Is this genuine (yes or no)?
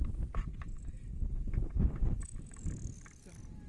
yes